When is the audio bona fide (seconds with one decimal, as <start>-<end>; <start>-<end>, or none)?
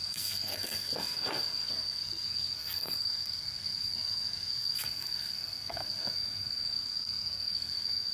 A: none